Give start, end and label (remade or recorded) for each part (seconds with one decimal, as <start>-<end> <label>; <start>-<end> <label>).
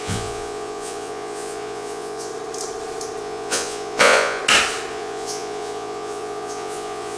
0.0-2.3 remade; 2.3-3.2 recorded; 3.2-4.4 remade; 4.4-4.9 recorded; 4.9-7.2 remade